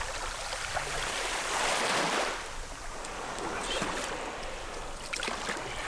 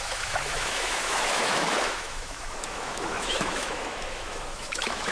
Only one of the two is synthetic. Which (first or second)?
second